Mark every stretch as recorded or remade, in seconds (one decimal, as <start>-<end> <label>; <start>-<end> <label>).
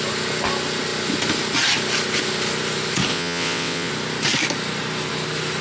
0.0-3.1 recorded; 3.1-3.9 remade; 3.9-5.6 recorded